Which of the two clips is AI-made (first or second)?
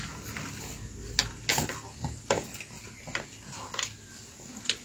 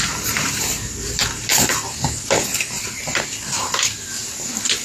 second